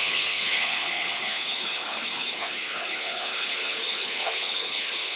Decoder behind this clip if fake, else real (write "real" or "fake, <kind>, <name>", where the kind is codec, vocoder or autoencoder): fake, codec, HILCodec